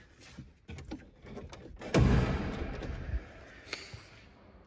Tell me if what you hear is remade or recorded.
recorded